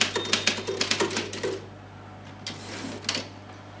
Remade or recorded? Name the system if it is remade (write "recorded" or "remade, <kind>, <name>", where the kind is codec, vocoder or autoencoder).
recorded